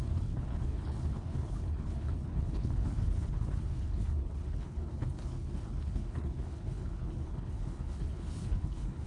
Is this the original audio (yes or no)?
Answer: no